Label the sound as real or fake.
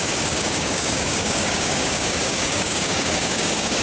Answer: fake